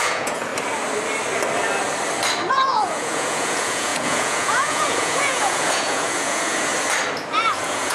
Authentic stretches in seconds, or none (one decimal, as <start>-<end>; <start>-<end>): 0.5-2.5; 6.7-7.3